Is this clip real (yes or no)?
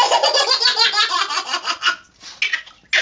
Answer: yes